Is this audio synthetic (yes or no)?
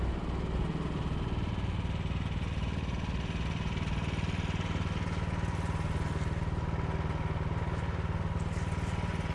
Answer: no